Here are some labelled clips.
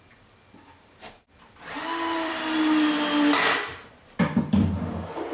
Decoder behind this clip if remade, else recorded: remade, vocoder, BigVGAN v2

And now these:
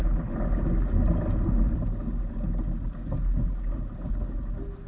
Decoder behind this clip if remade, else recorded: recorded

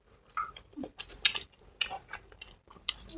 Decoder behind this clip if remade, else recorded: recorded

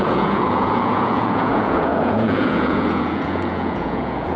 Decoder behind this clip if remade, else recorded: remade, vocoder, Vocos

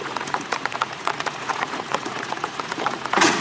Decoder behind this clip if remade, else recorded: remade, vocoder, Vocos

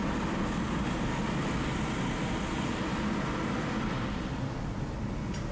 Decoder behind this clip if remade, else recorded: recorded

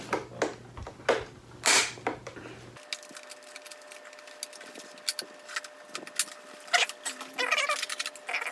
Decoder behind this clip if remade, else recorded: recorded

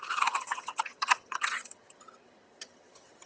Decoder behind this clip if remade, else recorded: remade, vocoder, HiFi-GAN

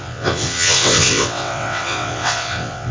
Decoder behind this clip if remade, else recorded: remade, vocoder, WaveNeXt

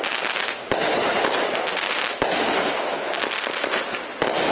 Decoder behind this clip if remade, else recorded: recorded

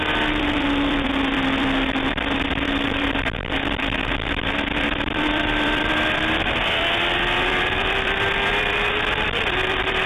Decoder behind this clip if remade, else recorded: remade, vocoder, BigVGAN v2